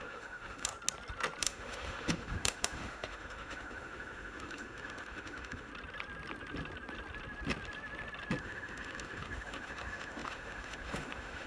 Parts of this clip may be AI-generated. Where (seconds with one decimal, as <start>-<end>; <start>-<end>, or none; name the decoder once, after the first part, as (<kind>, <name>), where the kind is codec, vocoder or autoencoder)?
0.0-0.7 (autoencoder, DAC-VAE); 1.4-5.7; 8.4-11.5